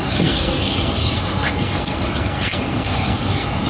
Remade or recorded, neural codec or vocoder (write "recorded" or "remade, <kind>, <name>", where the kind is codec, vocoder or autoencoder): remade, codec, SNAC